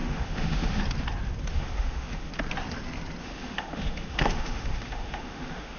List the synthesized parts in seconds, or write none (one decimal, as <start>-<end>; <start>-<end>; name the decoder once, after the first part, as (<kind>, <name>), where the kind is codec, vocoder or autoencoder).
0.0-0.8 (autoencoder, DAC-VAE); 1.5-2.3; 3.2-5.8

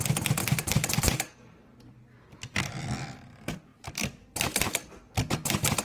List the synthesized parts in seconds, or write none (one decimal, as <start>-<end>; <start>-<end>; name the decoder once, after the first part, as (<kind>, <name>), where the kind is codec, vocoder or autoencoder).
0.4-1.0 (vocoder, BigVGAN v2); 3.7-5.0